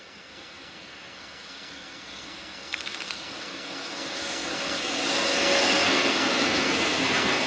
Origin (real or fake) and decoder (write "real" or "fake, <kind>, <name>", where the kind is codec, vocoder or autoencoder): fake, codec, SNAC